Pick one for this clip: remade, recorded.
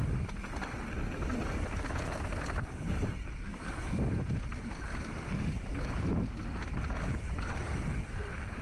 recorded